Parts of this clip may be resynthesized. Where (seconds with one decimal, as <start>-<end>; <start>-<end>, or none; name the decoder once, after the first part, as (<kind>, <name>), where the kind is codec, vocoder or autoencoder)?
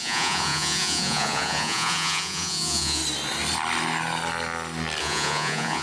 0.0-3.0 (vocoder, Vocos); 5.0-5.8